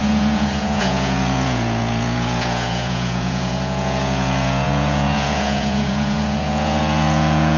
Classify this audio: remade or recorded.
remade